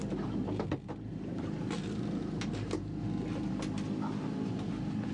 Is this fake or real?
real